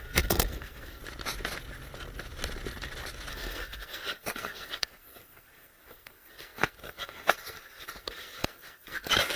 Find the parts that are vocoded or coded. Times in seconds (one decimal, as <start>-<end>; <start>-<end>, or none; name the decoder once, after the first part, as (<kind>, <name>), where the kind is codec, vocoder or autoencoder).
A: 0.0-1.0 (codec, SNAC); 3.3-9.4